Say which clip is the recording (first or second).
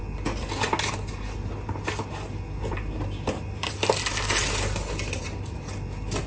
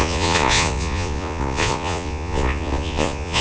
first